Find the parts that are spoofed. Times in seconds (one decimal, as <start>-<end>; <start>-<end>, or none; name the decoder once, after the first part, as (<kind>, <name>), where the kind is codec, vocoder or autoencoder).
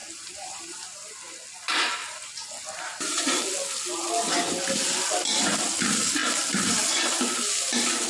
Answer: 0.0-1.1 (vocoder, BigVGAN v2); 6.2-6.7